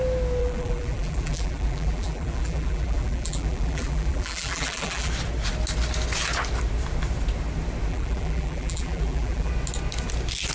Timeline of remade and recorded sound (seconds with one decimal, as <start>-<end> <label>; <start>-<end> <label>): 0.0-0.4 recorded; 0.4-5.1 remade; 5.1-7.9 recorded; 7.9-9.5 remade; 9.5-10.5 recorded